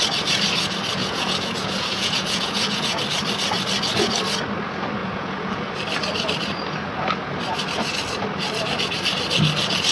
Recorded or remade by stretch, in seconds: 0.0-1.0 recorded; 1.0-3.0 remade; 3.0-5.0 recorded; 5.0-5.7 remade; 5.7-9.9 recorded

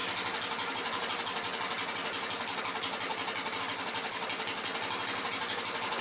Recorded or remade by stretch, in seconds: 0.0-6.0 recorded